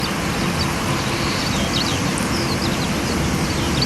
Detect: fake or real real